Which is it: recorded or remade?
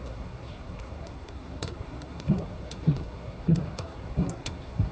remade